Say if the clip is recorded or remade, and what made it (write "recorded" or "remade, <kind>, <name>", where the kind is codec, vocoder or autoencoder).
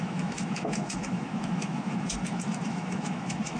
remade, autoencoder, DAC-VAE